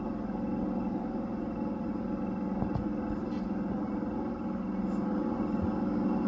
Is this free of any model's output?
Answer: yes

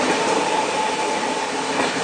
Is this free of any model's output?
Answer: no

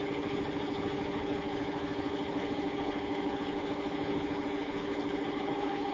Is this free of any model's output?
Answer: no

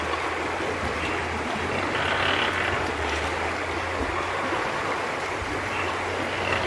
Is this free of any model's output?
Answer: yes